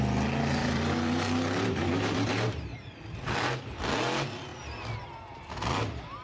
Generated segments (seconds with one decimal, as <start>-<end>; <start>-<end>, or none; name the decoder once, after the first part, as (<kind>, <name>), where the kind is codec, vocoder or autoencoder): 0.6-3.0 (vocoder, BigVGAN v2)

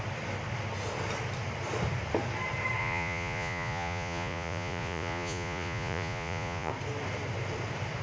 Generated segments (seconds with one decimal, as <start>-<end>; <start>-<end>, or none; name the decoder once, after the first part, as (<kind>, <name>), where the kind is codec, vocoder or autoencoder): 2.8-6.7 (vocoder, Vocos)